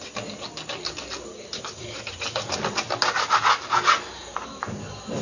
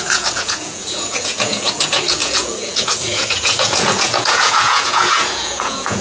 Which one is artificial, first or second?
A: second